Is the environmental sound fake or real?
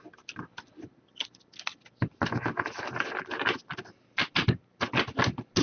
real